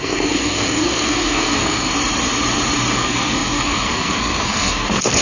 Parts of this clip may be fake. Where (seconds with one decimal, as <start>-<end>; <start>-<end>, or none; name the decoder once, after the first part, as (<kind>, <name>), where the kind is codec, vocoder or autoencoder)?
0.0-1.9 (codec, SNAC); 2.9-5.2